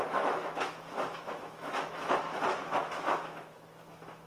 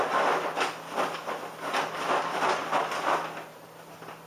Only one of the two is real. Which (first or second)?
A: second